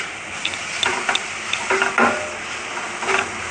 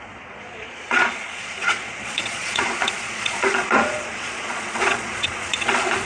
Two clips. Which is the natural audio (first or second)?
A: first